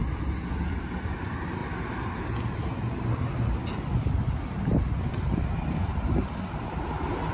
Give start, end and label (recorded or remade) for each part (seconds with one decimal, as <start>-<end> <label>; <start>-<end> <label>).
0.0-0.7 remade; 0.7-5.9 recorded; 5.9-7.3 remade